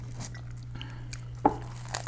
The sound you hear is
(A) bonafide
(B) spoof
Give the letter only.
A